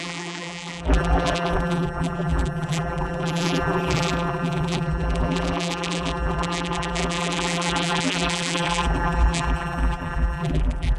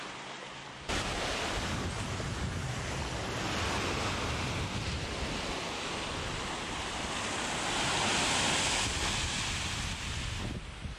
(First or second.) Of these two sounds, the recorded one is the second